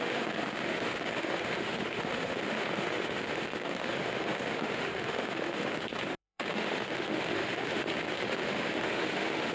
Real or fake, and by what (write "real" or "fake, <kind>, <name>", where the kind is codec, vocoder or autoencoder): fake, autoencoder, DAC-VAE